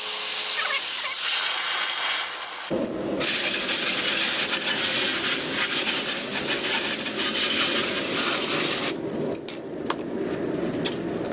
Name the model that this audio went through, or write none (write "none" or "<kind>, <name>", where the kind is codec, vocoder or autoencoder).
none